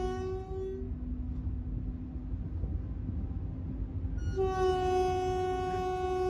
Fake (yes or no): no